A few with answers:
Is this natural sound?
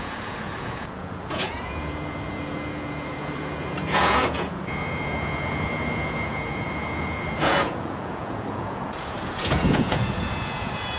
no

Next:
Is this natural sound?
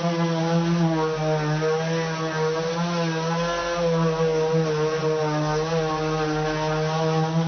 yes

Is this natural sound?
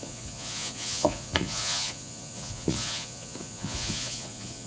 no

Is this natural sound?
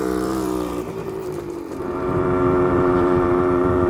no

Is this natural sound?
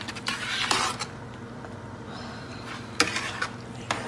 yes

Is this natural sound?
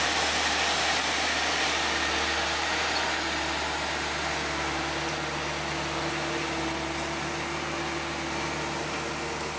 yes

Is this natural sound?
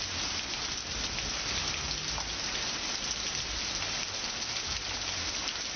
yes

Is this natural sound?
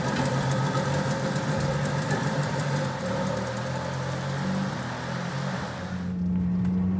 yes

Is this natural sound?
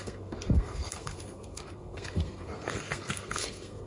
no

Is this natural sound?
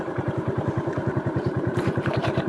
no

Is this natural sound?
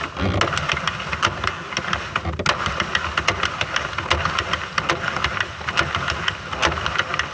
yes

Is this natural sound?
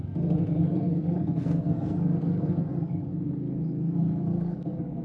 no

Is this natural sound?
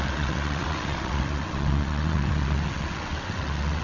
no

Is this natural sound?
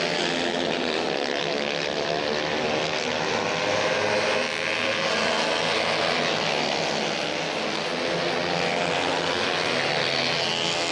yes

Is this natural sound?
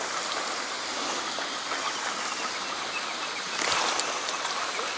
yes